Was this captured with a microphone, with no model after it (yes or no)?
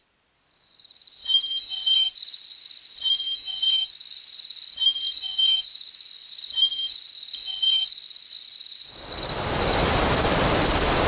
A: yes